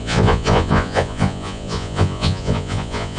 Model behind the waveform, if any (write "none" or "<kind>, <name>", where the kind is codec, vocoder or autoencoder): vocoder, Vocos